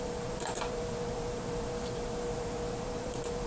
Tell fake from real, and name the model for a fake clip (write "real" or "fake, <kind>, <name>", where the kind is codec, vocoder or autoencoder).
fake, vocoder, BigVGAN v2